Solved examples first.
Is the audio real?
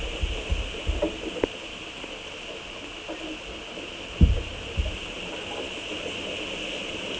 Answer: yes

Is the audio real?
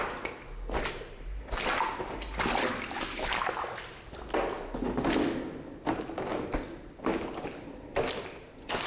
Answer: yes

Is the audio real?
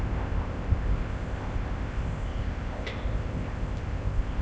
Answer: no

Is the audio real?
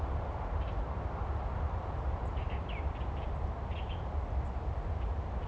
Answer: yes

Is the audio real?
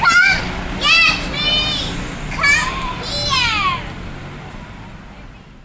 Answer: yes